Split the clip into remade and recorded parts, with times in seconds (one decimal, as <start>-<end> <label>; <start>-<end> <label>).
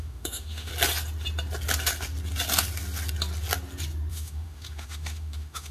0.0-0.7 remade; 0.7-4.1 recorded; 4.1-5.7 remade